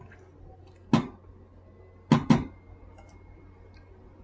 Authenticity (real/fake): real